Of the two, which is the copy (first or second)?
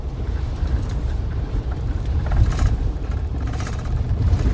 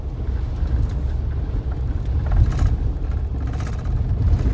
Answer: first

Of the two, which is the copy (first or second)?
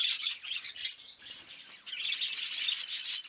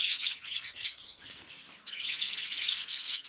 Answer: second